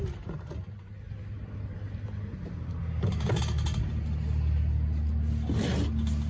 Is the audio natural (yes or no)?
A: yes